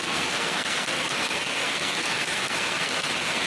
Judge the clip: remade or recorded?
remade